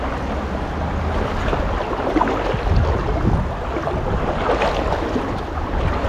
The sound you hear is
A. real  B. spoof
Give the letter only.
A